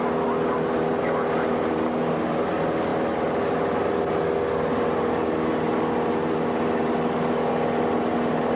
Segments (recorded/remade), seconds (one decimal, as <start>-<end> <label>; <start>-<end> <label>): 0.0-8.6 recorded